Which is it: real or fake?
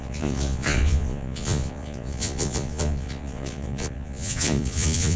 fake